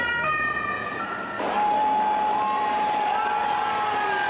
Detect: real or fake real